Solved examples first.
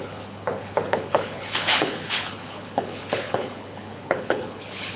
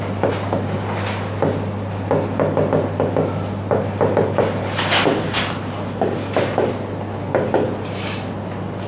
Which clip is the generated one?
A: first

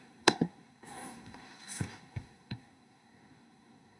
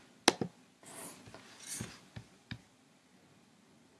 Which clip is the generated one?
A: first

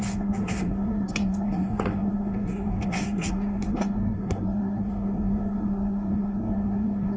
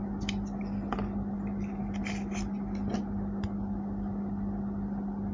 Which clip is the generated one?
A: first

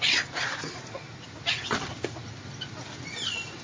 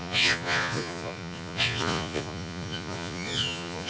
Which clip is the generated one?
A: second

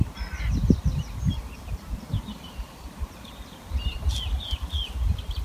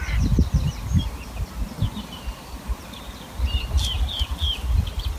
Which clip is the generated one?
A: first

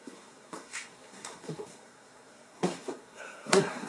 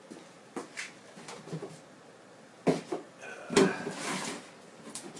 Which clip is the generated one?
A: first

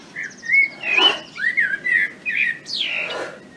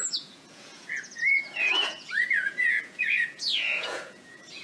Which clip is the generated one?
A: second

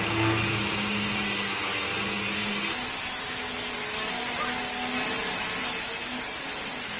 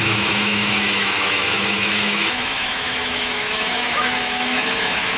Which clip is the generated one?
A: second